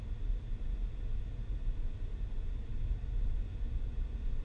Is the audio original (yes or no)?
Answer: yes